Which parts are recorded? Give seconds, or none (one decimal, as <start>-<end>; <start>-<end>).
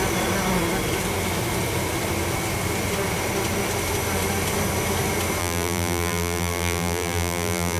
0.0-5.4